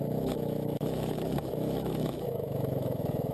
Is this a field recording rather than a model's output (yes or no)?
no